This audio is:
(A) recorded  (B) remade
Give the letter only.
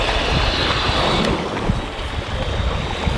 A